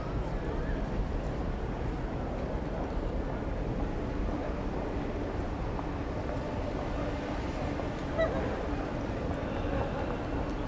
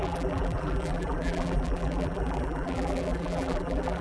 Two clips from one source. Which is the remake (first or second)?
second